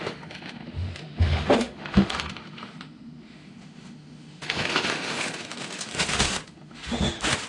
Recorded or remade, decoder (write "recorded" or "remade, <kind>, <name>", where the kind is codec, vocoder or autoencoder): remade, autoencoder, DAC-VAE